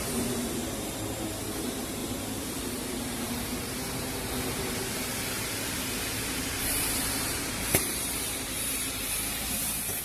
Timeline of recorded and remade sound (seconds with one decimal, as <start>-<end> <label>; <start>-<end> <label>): 0.0-10.0 remade